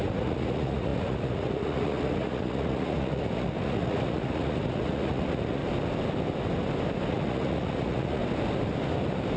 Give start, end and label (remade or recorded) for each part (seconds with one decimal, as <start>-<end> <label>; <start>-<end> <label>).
0.0-5.6 remade; 5.6-7.1 recorded; 7.1-8.2 remade; 8.2-9.4 recorded